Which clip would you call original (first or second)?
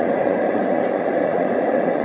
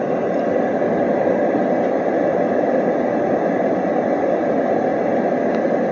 second